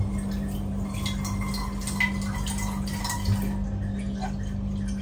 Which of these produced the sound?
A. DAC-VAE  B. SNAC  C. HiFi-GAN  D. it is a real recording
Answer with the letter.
D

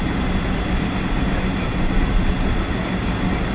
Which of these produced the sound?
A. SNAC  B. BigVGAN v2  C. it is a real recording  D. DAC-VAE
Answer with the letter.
C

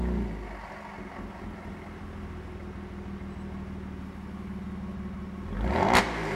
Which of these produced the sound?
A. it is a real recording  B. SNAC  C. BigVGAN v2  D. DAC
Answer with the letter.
A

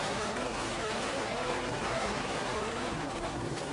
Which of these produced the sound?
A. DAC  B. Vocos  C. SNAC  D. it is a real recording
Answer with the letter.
C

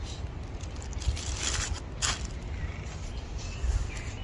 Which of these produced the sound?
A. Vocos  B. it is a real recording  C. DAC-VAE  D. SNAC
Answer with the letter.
B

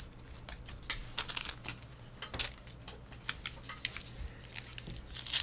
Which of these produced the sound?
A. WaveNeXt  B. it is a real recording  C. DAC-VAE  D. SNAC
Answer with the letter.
B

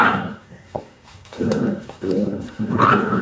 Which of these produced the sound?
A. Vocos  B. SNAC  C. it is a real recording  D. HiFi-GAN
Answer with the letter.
B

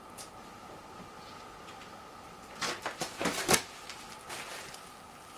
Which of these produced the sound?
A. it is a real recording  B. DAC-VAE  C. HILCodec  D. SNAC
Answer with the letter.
A